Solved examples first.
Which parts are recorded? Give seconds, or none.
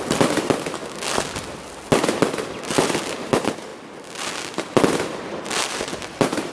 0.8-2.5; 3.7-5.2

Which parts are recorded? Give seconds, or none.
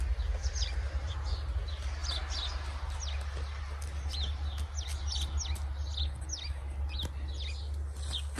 0.0-0.4; 1.1-8.4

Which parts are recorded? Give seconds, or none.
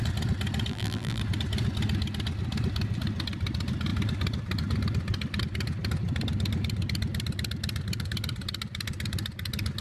0.0-0.7; 1.2-9.8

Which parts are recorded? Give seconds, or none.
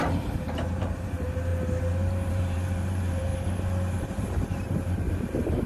1.5-2.3; 3.3-4.0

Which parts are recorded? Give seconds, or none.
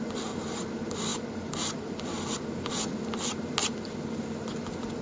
0.0-1.1; 1.9-5.0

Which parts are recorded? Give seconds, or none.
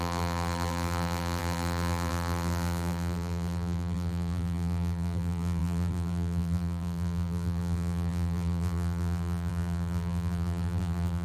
none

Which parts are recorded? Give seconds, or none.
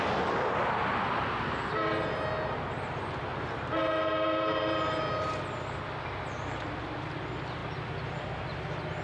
0.0-3.3; 5.4-9.0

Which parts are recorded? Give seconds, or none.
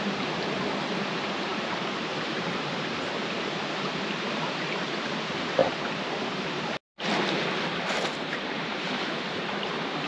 5.6-7.8